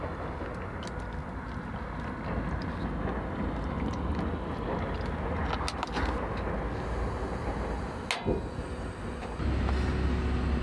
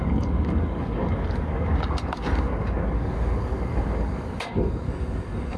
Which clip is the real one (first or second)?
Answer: first